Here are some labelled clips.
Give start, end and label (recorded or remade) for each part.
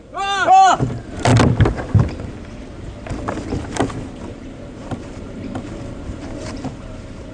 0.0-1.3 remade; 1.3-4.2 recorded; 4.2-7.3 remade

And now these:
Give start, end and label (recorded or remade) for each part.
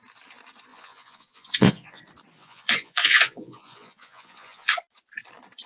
0.0-0.7 recorded; 0.7-2.0 remade; 2.0-2.4 recorded; 2.4-4.7 remade; 4.7-5.7 recorded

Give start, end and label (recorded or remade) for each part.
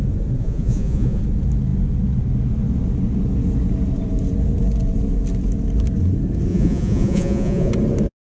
0.0-0.4 recorded; 0.4-1.2 remade; 1.2-6.5 recorded; 6.5-7.7 remade; 7.7-8.3 recorded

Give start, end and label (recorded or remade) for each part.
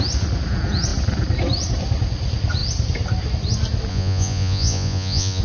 0.0-3.9 recorded; 3.9-5.4 remade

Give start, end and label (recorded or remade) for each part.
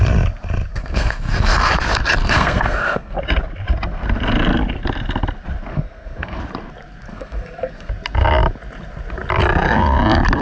0.0-0.7 recorded; 0.7-1.7 remade; 1.7-2.2 recorded; 2.2-3.2 remade; 3.2-5.7 recorded; 5.7-6.4 remade; 6.4-7.1 recorded; 7.1-7.9 remade; 7.9-10.4 recorded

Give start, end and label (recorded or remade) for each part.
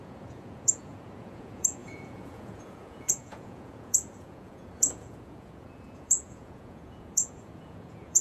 0.0-8.2 remade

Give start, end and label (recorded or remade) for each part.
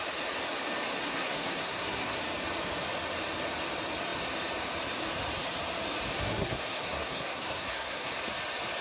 0.0-1.0 recorded; 1.0-2.2 remade; 2.2-6.1 recorded; 6.1-8.1 remade; 8.1-8.8 recorded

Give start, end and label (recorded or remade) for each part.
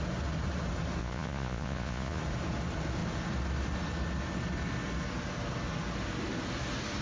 0.0-1.0 recorded; 1.0-2.2 remade; 2.2-7.0 recorded